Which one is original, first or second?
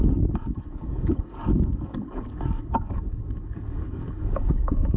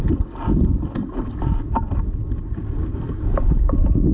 second